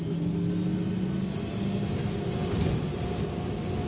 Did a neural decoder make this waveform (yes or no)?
no